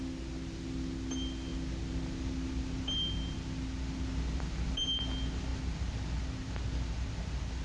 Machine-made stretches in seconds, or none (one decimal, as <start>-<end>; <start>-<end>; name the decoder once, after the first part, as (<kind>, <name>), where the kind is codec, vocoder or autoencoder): none